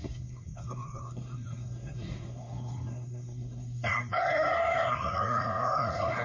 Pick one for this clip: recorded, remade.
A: remade